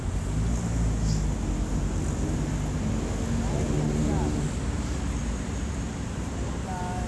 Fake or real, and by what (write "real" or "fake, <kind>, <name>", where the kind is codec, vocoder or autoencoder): real